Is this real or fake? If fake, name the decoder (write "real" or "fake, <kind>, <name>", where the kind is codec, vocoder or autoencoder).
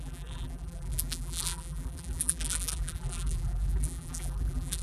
fake, vocoder, BigVGAN v2